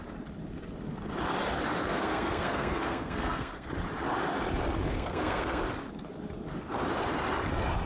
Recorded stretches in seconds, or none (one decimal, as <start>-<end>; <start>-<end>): 0.0-1.8; 3.7-4.9; 5.6-7.9